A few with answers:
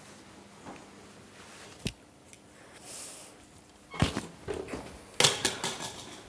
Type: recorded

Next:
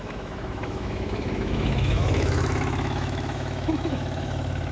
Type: remade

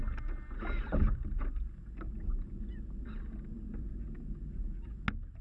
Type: recorded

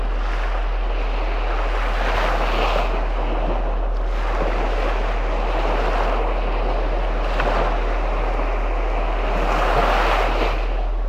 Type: recorded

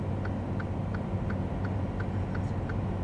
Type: recorded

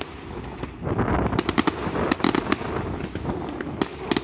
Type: recorded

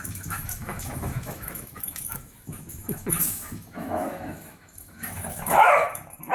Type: remade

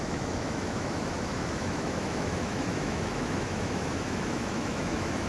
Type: remade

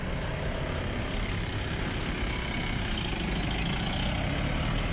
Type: recorded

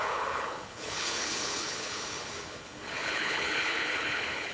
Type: remade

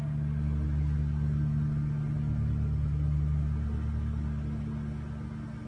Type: recorded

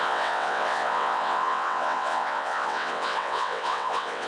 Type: remade